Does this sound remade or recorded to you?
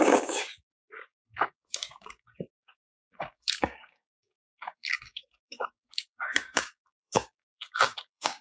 remade